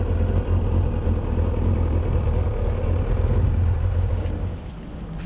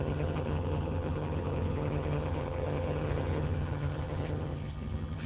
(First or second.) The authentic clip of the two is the first